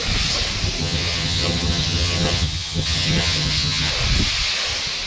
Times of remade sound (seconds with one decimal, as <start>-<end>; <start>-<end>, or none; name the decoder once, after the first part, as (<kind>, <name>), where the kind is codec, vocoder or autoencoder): 0.8-3.9 (vocoder, HiFi-GAN)